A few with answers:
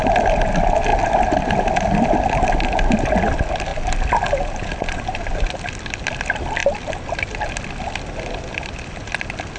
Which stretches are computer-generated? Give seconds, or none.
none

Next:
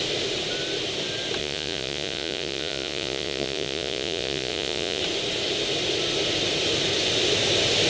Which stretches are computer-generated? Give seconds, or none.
1.4-5.0 (vocoder, Vocos)

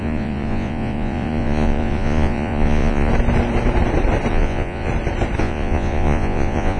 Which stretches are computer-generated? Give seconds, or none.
0.0-3.1 (vocoder, Vocos); 4.3-4.9; 5.4-6.8

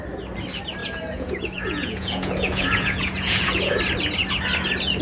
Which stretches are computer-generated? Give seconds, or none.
0.8-3.8 (vocoder, Vocos)

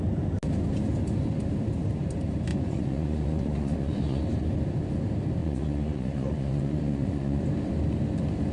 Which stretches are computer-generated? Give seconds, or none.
2.5-4.2 (vocoder, Vocos); 5.4-7.4

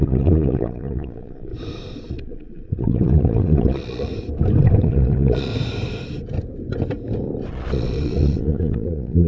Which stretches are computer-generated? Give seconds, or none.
0.0-1.5 (vocoder, Vocos); 2.1-4.1; 4.8-5.5; 7.5-9.3

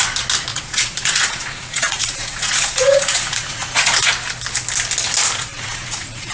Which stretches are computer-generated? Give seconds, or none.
0.5-4.1 (vocoder, Vocos); 5.5-6.3